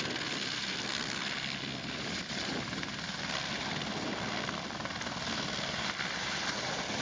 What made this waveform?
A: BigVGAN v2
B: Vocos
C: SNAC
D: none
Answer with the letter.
D